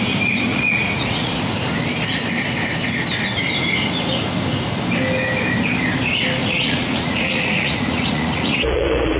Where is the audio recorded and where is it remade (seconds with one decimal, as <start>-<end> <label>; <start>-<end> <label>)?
0.0-0.5 recorded; 0.5-1.4 remade; 1.4-6.4 recorded; 6.4-9.2 remade